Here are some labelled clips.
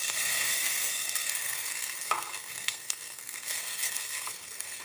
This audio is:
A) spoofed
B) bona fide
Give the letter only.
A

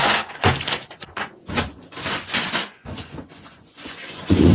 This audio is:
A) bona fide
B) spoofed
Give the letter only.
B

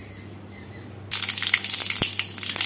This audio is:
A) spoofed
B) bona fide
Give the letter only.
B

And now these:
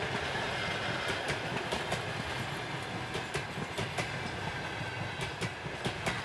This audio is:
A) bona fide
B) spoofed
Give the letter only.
A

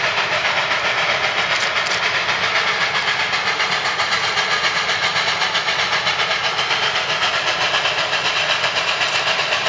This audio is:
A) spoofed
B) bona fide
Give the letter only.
A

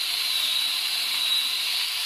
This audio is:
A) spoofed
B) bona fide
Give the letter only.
A